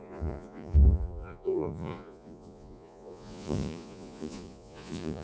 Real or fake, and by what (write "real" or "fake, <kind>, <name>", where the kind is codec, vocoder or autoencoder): fake, vocoder, Vocos